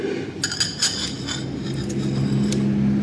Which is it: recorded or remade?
recorded